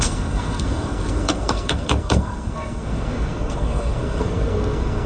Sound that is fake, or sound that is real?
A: fake